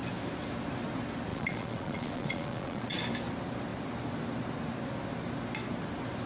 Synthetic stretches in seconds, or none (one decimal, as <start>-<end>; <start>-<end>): 1.3-3.0